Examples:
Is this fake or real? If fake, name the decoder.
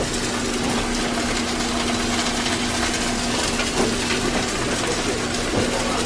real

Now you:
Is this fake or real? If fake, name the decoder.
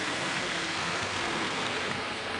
fake, codec, SNAC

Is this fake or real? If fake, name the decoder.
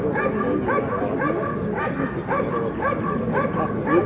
real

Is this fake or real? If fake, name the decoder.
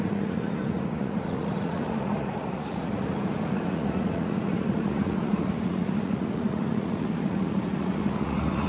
fake, vocoder, Vocos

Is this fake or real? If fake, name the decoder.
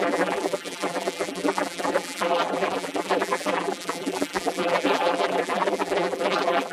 fake, vocoder, BigVGAN v2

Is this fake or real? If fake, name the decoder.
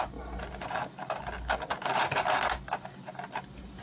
real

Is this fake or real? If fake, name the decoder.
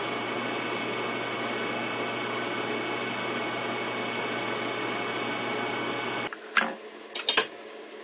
real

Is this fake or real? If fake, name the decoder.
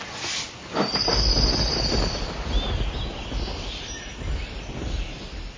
real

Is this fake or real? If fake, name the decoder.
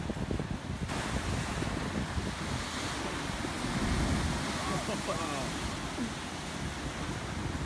real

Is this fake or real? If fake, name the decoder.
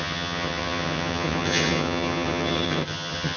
fake, vocoder, HiFi-GAN